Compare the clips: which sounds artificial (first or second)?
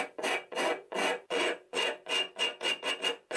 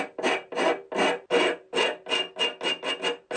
first